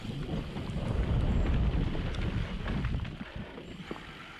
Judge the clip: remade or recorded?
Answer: recorded